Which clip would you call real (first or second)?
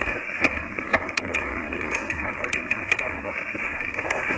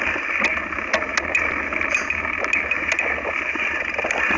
second